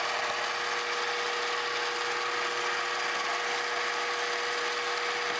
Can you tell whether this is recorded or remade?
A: recorded